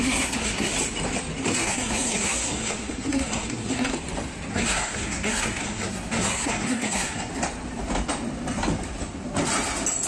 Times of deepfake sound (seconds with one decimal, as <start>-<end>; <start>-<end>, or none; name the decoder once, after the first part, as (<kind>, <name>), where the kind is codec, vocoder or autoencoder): 0.0-0.7 (codec, SNAC); 1.5-3.9; 4.5-7.3